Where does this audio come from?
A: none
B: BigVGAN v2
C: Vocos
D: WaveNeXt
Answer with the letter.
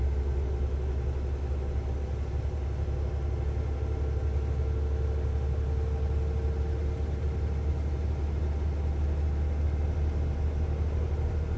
A